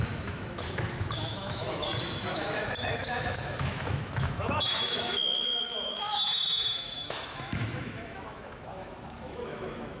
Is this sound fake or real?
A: fake